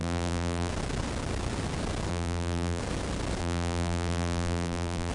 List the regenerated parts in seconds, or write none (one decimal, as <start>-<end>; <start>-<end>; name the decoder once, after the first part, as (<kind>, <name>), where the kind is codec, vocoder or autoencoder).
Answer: 0.0-0.7 (vocoder, BigVGAN v2); 2.1-2.8; 3.4-5.1

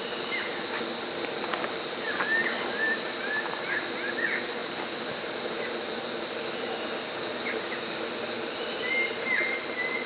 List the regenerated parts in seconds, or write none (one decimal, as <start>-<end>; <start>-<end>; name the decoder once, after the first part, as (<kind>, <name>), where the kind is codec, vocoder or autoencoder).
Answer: none